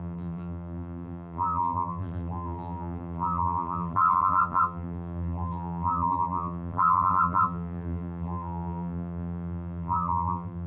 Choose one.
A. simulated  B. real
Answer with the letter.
A